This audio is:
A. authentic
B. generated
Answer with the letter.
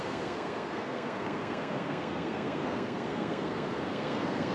B